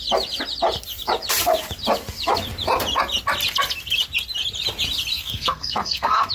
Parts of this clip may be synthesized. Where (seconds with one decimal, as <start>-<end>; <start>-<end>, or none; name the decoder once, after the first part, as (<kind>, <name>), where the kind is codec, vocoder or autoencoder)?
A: 5.1-6.3 (codec, SNAC)